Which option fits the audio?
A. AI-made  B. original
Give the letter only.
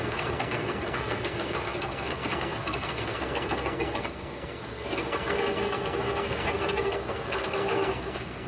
A